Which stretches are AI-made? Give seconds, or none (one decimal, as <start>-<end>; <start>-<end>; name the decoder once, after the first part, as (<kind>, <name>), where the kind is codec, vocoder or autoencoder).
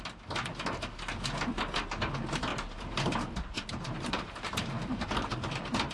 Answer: 2.5-5.5 (vocoder, BigVGAN v2)